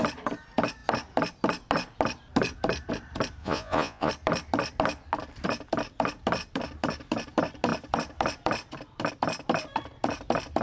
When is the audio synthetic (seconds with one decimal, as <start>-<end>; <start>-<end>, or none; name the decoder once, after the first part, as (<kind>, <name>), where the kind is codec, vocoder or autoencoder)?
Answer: 3.4-4.1 (vocoder, Vocos)